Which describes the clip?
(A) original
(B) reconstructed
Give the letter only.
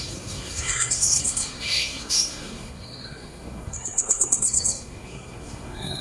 B